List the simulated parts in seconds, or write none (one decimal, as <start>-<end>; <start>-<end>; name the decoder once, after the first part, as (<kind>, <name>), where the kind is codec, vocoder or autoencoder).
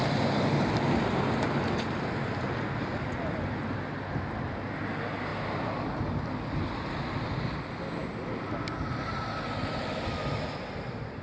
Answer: none